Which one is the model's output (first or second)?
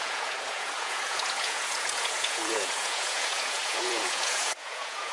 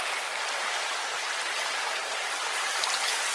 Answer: first